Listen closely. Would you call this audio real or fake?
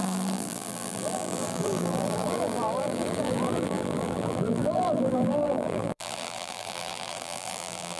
fake